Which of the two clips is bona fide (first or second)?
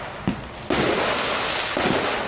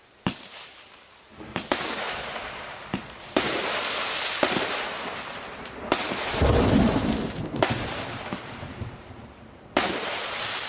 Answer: first